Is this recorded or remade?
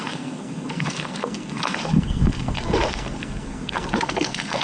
remade